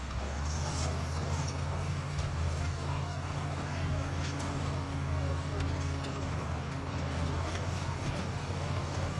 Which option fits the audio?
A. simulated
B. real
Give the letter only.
A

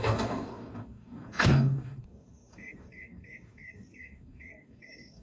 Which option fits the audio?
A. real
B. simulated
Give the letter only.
B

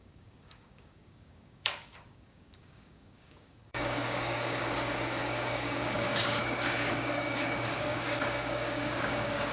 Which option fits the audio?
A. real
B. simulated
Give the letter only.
B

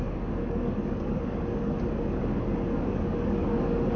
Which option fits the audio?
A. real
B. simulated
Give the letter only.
B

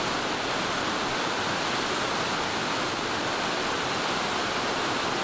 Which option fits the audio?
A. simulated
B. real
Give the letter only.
B